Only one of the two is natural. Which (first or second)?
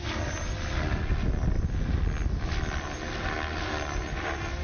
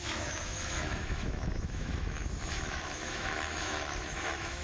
first